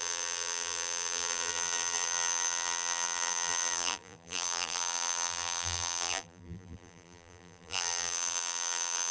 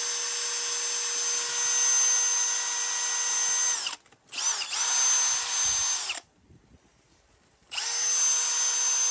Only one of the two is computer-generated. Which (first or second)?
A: first